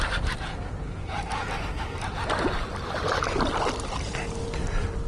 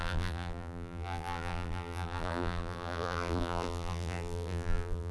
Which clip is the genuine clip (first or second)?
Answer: first